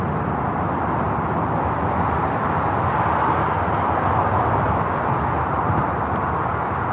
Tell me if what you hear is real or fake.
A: real